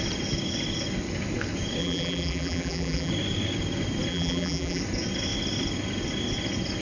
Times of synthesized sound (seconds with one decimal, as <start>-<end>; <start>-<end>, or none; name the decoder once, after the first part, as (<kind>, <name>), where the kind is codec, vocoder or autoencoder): 1.8-3.1 (vocoder, BigVGAN v2); 4.1-4.8